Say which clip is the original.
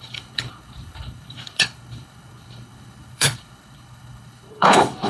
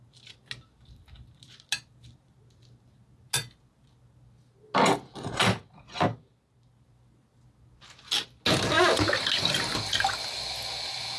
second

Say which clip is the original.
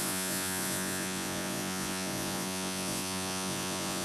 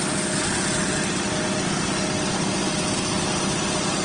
second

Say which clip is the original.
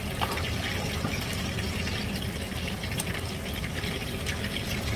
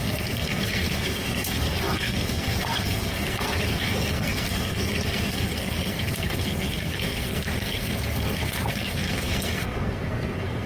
first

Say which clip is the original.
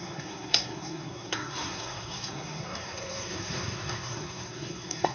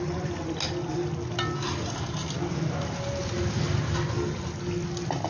second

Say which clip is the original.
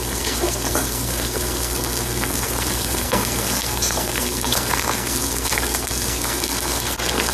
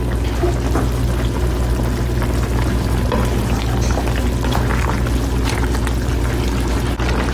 second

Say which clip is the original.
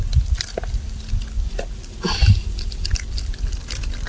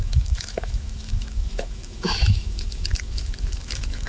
first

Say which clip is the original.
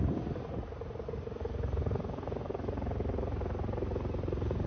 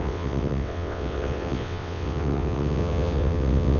first